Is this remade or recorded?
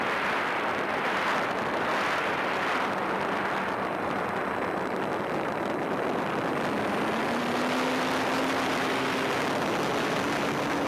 recorded